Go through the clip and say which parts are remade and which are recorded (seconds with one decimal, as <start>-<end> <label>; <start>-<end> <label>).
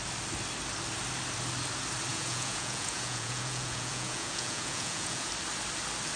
0.0-2.1 recorded; 2.1-5.3 remade; 5.3-6.2 recorded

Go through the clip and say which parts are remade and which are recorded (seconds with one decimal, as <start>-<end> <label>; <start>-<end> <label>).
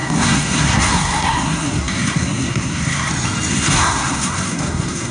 0.0-3.1 remade; 3.1-3.5 recorded; 3.5-5.1 remade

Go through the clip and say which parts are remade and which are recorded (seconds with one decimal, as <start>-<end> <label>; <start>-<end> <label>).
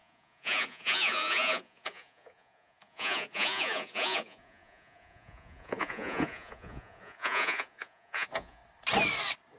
0.0-8.6 remade; 8.6-9.6 recorded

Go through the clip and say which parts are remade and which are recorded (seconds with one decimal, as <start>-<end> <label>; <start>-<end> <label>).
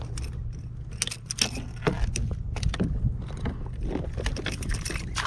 0.0-0.4 remade; 0.4-3.6 recorded; 3.6-5.3 remade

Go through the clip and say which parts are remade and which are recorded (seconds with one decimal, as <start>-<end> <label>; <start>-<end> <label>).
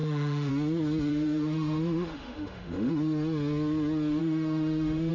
0.0-0.5 remade; 0.5-1.1 recorded; 1.1-2.9 remade; 2.9-4.2 recorded; 4.2-5.1 remade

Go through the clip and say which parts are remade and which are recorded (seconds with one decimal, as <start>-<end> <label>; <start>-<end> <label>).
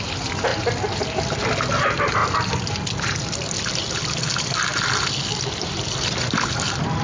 0.0-7.0 recorded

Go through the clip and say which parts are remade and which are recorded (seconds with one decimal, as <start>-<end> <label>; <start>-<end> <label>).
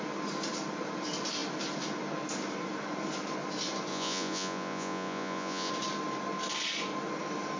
0.0-3.9 recorded; 3.9-5.7 remade; 5.7-7.6 recorded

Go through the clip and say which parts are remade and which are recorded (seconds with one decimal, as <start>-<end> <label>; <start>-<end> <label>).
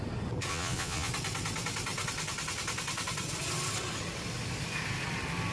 0.0-0.5 recorded; 0.5-1.1 remade; 1.1-5.5 recorded